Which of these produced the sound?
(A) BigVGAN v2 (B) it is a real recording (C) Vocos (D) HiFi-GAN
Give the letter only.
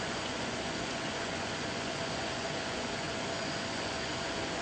C